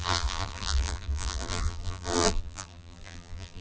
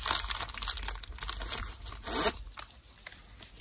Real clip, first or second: second